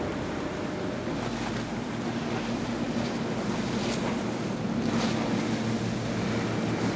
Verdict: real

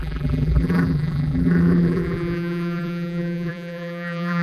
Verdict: fake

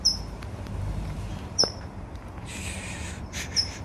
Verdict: fake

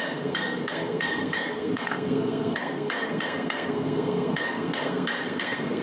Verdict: fake